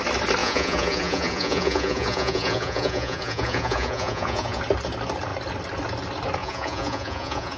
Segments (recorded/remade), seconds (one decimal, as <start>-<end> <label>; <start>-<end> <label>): 0.0-0.4 recorded; 0.4-4.6 remade; 4.6-6.4 recorded; 6.4-7.6 remade